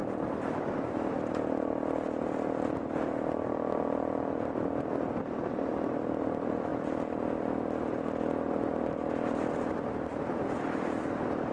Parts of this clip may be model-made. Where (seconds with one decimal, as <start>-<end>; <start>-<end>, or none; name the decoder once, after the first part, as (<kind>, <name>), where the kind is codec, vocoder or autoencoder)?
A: none